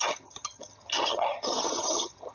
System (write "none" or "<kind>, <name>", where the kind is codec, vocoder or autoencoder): vocoder, HiFi-GAN